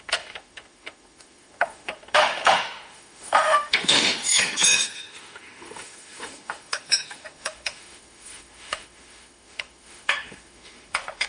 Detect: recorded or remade remade